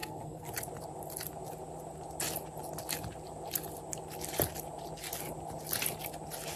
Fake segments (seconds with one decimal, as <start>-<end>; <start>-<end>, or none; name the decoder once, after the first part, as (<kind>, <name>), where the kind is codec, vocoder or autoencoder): 0.0-0.5 (codec, SNAC)